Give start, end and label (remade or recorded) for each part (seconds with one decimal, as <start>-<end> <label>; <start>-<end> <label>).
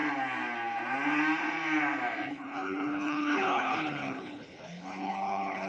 0.0-2.3 recorded; 2.3-5.7 remade